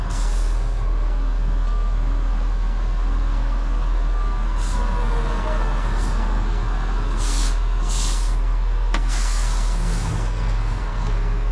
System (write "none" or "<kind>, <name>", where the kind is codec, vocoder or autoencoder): codec, SNAC